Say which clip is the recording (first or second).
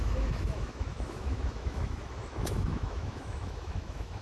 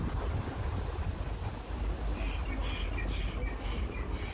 second